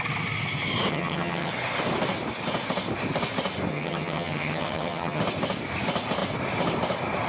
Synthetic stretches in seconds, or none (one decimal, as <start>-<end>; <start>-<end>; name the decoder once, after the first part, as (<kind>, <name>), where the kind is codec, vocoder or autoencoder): 0.9-1.5 (vocoder, HiFi-GAN); 3.7-5.2

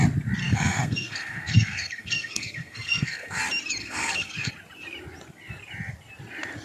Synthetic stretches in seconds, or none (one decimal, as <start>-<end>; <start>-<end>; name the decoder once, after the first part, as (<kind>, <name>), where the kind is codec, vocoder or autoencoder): 0.4-3.4 (codec, SNAC); 3.8-4.5

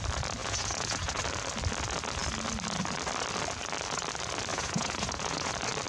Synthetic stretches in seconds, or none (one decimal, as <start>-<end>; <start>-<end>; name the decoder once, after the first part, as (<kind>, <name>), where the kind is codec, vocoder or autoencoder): 0.4-1.2 (vocoder, Vocos); 4.5-5.5

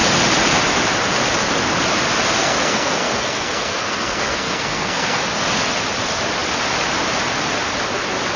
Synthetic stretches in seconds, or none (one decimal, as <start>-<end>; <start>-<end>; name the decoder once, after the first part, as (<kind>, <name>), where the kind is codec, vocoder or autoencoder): 2.4-5.2 (codec, SNAC)

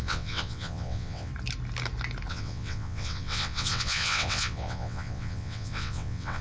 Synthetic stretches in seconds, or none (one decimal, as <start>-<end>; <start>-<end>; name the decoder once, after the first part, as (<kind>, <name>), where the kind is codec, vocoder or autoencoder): 0.0-1.3 (vocoder, WaveNeXt); 2.3-6.4